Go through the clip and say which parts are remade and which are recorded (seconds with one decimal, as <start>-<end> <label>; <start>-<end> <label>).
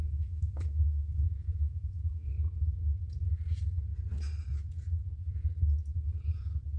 0.0-2.3 remade; 2.3-6.8 recorded